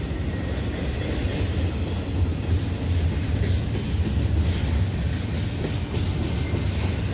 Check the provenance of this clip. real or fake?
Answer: real